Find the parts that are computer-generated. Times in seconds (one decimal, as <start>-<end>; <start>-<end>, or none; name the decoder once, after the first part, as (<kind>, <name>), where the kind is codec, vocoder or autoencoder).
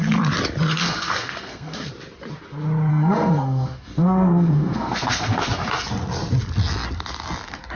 0.8-1.9 (codec, SNAC); 2.9-5.5